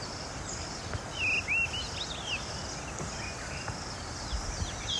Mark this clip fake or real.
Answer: real